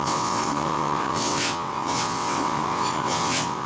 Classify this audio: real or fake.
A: fake